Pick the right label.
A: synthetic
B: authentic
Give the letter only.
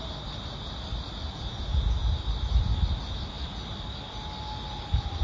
B